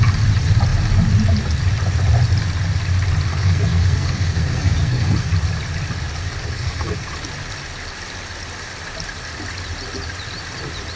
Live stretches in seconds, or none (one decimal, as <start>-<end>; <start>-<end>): 0.0-3.3; 5.3-6.2; 7.1-11.0